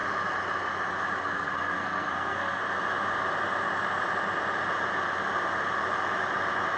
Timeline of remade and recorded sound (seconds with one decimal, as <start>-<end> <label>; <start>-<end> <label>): 0.0-1.2 recorded; 1.2-2.6 remade; 2.6-6.8 recorded